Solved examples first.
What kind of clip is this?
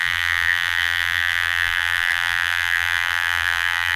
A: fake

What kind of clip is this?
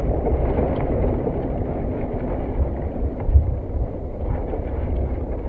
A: fake